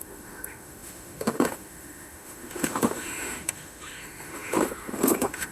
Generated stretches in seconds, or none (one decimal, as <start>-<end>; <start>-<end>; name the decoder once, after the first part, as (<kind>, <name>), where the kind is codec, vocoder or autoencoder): 0.0-5.5 (autoencoder, DAC-VAE)